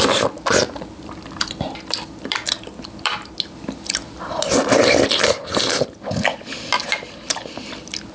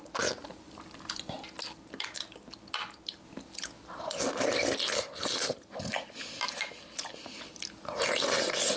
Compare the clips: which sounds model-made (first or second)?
first